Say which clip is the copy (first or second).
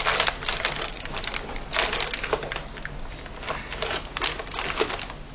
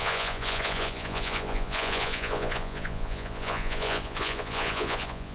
second